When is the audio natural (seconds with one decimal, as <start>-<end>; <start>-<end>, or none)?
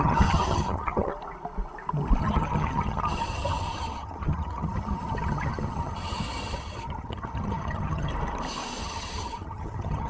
1.1-2.2; 8.1-8.8